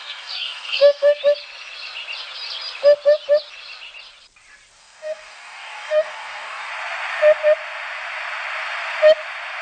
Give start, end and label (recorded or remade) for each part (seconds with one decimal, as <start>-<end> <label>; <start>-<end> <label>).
0.0-1.2 remade; 1.2-4.8 recorded; 4.8-6.7 remade; 6.7-9.6 recorded